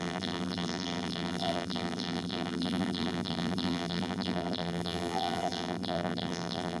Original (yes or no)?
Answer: no